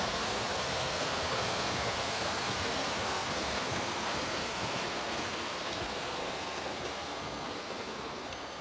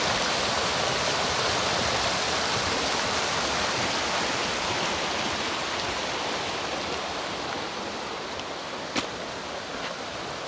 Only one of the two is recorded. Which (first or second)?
second